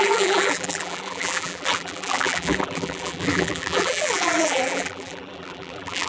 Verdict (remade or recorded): remade